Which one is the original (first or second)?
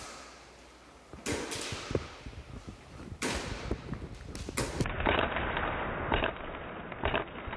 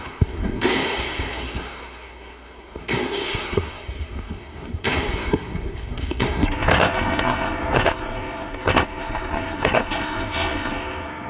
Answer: first